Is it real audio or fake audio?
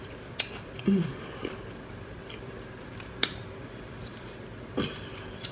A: fake